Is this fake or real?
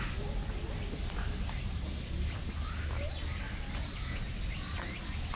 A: real